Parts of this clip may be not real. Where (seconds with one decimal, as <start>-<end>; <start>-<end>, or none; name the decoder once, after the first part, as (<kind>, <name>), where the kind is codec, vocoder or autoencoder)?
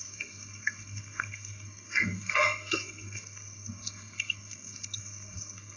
0.0-5.8 (codec, SNAC)